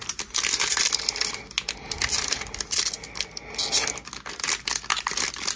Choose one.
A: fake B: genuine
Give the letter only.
B